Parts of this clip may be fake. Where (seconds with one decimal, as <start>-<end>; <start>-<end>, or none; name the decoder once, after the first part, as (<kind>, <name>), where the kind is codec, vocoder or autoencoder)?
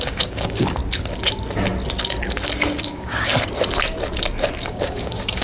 0.0-0.8 (codec, DAC); 2.8-3.3; 4.6-5.4